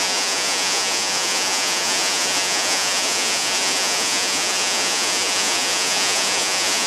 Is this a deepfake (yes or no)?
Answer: yes